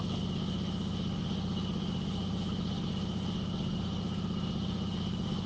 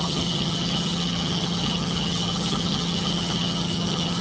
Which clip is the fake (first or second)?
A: second